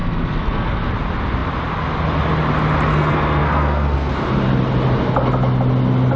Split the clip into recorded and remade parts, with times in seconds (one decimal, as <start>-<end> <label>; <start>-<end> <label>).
0.0-0.9 remade; 0.9-2.9 recorded; 2.9-4.1 remade; 4.1-6.2 recorded